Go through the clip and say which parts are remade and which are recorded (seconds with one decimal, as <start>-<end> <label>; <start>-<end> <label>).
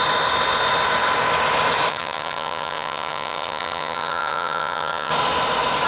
0.0-1.9 recorded; 1.9-5.1 remade; 5.1-5.9 recorded